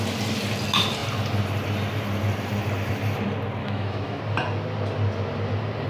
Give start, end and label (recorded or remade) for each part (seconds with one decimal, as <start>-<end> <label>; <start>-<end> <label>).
0.0-3.6 recorded; 3.6-4.2 remade; 4.2-5.9 recorded